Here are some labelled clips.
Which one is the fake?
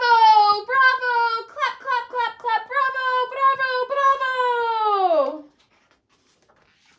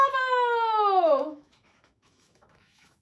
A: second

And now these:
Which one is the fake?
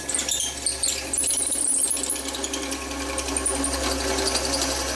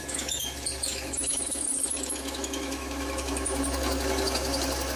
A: second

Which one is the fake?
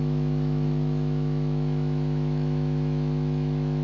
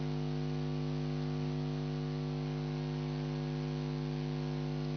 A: first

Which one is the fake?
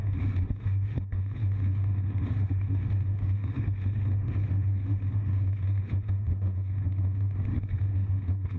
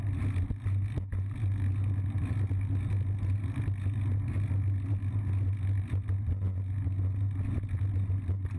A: first